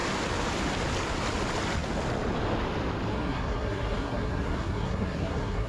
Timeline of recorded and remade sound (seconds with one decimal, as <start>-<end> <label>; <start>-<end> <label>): 0.0-3.1 recorded; 3.1-5.7 remade